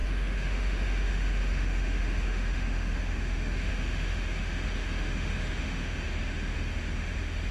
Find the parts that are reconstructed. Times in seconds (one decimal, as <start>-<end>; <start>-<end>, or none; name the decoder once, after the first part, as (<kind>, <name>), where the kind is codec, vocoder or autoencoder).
0.0-7.5 (autoencoder, DAC-VAE)